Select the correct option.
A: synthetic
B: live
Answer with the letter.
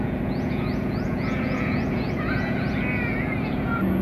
A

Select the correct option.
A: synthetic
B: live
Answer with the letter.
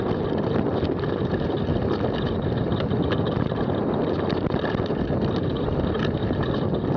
B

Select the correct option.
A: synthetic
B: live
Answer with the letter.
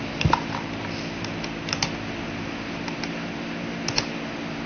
B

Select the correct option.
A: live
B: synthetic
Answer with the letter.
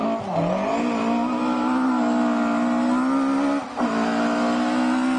A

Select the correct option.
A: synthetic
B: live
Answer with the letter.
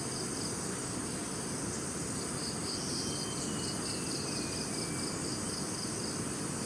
B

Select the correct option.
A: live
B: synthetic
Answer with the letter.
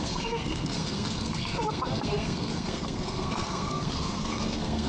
B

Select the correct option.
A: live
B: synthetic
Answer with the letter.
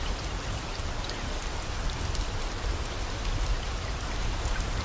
A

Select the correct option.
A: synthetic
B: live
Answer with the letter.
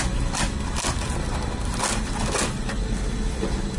B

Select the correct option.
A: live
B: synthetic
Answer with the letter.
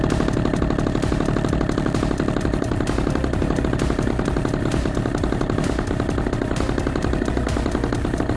A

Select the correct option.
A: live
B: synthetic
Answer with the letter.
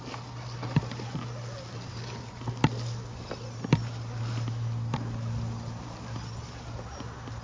A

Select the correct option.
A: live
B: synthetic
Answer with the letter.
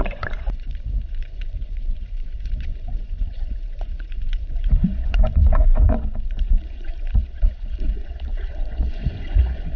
B